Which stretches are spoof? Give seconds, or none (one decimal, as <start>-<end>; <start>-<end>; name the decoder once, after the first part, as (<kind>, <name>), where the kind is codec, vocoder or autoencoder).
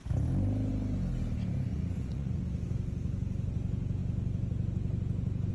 1.7-2.4 (vocoder, Vocos)